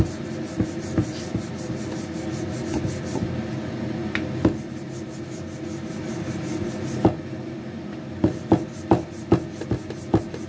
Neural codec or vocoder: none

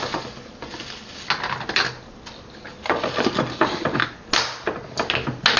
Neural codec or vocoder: none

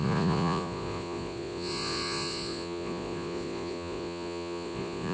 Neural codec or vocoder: vocoder, Vocos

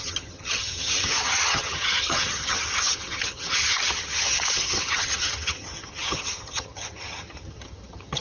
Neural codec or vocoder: vocoder, HiFi-GAN